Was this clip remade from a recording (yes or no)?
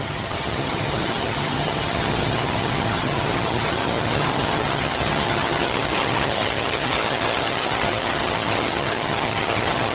yes